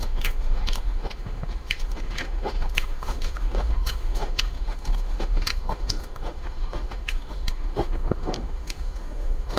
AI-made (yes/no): yes